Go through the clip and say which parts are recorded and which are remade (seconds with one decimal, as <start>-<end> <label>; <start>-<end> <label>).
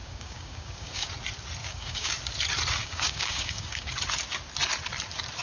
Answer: 0.0-1.1 remade; 1.1-1.6 recorded; 1.6-2.1 remade; 2.1-2.8 recorded; 2.8-3.9 remade; 3.9-5.4 recorded